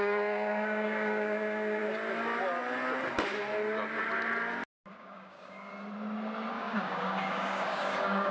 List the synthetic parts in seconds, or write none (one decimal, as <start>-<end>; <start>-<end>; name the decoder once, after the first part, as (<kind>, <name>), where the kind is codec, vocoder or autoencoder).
0.0-1.8 (codec, DAC); 4.9-5.7; 6.5-8.3